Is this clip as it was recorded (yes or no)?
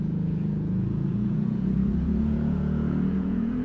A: no